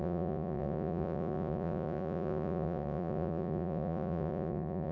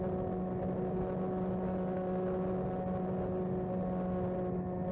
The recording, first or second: second